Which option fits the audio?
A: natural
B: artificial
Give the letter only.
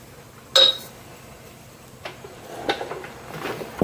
A